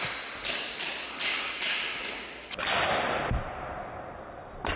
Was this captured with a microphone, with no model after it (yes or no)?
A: yes